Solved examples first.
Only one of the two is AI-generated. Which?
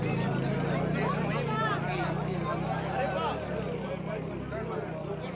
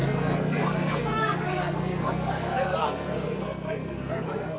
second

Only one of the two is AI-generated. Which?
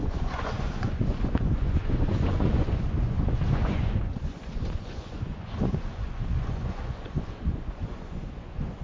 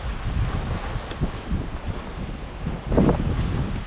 first